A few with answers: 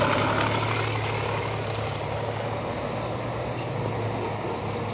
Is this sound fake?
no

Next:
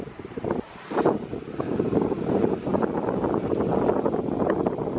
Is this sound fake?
no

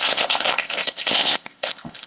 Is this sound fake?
yes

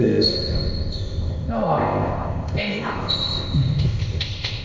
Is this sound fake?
yes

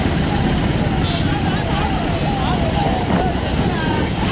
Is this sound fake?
no